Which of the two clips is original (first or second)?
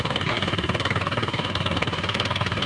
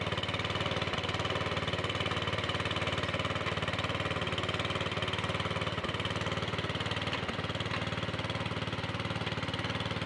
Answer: second